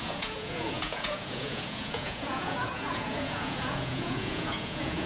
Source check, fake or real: fake